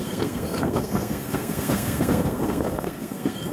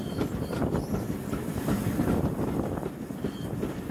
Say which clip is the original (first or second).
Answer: second